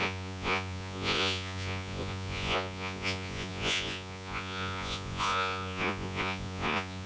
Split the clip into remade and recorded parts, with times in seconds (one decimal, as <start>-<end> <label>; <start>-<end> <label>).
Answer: 0.0-7.1 remade